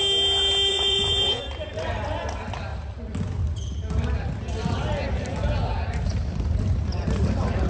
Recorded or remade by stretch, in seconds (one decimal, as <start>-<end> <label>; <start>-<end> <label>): 0.0-0.7 recorded; 0.7-1.4 remade; 1.4-7.7 recorded